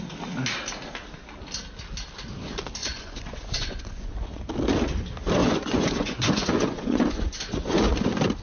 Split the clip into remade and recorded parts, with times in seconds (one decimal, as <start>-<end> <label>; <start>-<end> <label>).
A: 0.0-2.8 recorded; 2.8-4.4 remade; 4.4-5.4 recorded; 5.4-7.8 remade; 7.8-8.4 recorded